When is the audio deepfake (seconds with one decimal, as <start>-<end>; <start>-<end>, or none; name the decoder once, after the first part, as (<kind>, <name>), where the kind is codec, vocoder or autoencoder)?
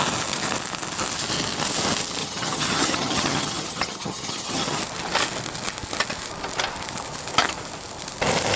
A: 2.2-4.8 (vocoder, HiFi-GAN)